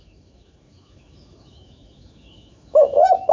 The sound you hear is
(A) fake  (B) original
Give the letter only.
A